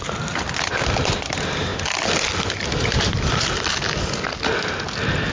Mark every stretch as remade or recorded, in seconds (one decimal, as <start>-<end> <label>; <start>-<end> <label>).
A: 0.0-5.3 recorded